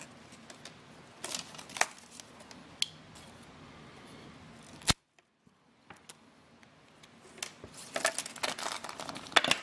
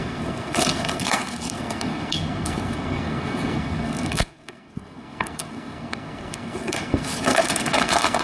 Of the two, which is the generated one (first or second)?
second